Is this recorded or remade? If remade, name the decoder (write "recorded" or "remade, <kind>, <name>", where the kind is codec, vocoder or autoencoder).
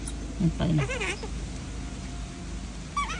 recorded